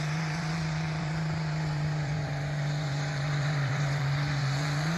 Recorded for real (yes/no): no